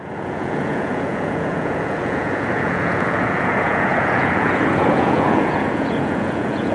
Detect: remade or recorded remade